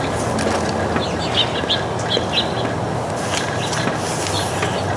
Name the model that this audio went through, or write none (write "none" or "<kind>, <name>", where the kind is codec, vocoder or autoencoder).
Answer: none